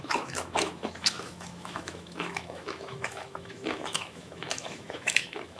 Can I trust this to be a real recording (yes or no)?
no